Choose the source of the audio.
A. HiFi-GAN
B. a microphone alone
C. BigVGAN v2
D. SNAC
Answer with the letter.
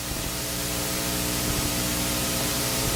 C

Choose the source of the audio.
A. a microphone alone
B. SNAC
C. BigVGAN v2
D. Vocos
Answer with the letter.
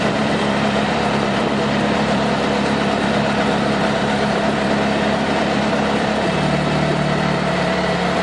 C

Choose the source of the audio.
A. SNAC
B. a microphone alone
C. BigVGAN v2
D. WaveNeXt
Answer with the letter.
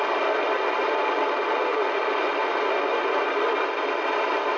B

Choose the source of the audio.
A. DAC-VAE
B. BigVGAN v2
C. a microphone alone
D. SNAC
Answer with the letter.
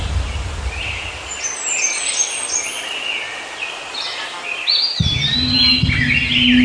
C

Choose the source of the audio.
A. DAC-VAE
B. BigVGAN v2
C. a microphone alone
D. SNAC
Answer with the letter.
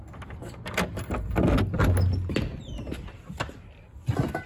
C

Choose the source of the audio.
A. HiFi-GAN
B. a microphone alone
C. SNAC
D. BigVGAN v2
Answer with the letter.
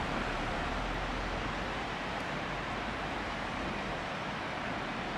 D